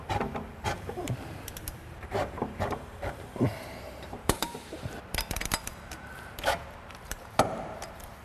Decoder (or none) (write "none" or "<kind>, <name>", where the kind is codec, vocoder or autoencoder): vocoder, BigVGAN v2